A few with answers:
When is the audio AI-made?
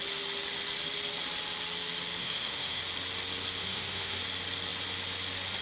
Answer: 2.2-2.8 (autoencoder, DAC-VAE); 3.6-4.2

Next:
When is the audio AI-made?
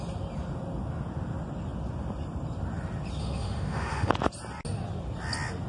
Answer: 3.2-4.1 (autoencoder, DAC-VAE)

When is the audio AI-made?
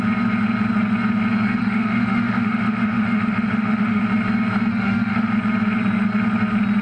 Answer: 1.6-4.0 (autoencoder, DAC-VAE); 4.7-5.3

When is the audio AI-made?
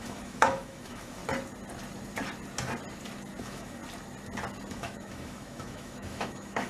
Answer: 0.0-1.2 (autoencoder, DAC-VAE); 3.4-3.8; 4.7-6.7